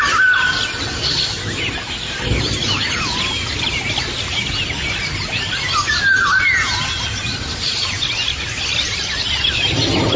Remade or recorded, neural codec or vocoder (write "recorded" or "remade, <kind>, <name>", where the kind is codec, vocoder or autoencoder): recorded